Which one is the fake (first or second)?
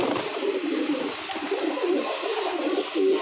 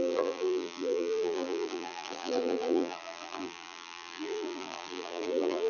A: second